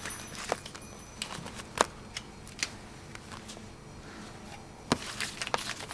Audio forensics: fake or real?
real